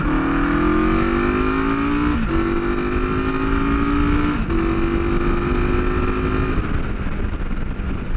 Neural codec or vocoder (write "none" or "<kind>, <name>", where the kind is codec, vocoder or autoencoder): none